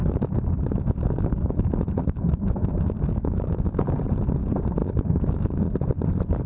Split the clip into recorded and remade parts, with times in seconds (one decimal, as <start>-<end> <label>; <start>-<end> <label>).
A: 0.0-3.9 remade; 3.9-4.8 recorded; 4.8-5.6 remade; 5.6-6.5 recorded